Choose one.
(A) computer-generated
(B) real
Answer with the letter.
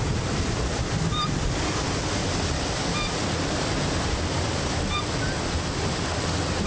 B